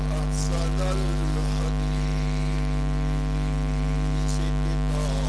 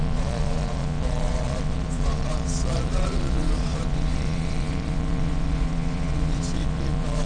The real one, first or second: first